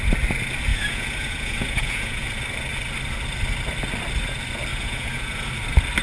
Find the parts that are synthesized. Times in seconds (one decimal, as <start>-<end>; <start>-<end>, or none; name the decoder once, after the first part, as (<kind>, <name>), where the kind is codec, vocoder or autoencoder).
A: 0.7-2.2 (vocoder, Vocos); 4.7-5.5